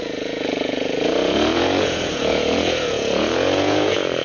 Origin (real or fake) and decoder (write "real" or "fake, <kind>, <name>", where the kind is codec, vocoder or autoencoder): fake, vocoder, Vocos